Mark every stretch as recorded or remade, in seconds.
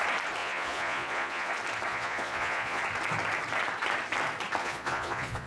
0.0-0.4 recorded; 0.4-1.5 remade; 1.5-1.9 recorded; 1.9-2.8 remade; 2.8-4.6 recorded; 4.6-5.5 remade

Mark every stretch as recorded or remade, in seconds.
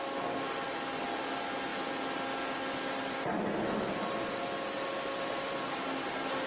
0.0-6.5 recorded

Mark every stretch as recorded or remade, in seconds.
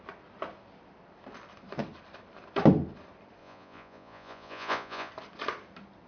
0.0-3.4 recorded; 3.4-5.1 remade; 5.1-6.1 recorded